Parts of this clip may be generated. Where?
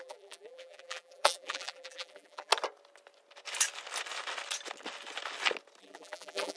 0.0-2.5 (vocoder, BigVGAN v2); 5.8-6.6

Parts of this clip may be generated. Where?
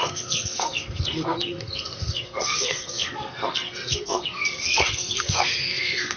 0.0-6.2 (codec, SNAC)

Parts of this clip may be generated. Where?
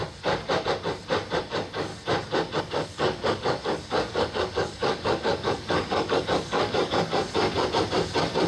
1.4-1.9 (codec, DAC); 2.6-7.1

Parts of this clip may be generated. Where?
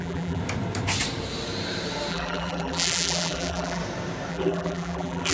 0.0-0.4 (vocoder, BigVGAN v2); 2.1-3.8; 4.3-5.3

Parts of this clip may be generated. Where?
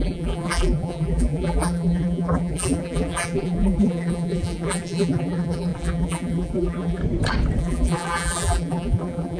0.0-7.0 (vocoder, BigVGAN v2); 7.6-9.4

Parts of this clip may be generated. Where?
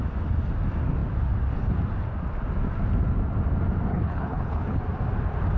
3.9-4.8 (codec, HILCodec)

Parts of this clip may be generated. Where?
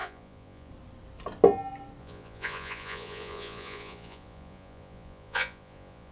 0.0-0.7 (vocoder, Vocos); 2.0-6.1